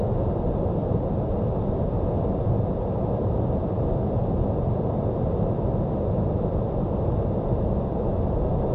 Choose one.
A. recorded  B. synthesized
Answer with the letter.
A